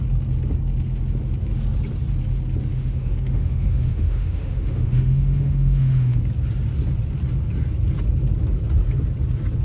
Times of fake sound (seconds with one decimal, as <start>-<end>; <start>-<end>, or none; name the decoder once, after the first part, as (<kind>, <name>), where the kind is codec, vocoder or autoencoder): 2.7-6.3 (autoencoder, DAC-VAE)